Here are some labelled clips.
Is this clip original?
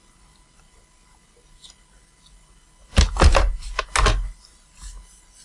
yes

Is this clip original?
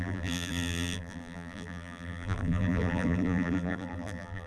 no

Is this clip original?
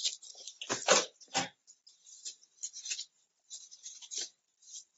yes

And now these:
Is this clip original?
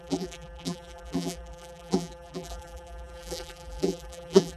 no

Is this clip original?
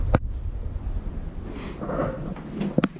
yes